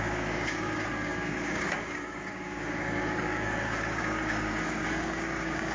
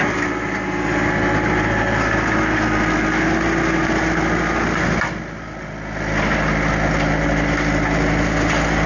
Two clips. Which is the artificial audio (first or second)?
first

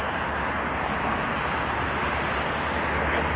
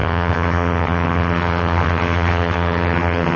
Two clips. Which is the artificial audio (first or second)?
second